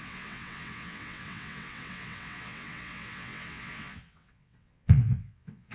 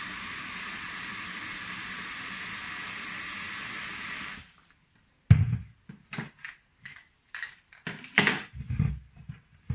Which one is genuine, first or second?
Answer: second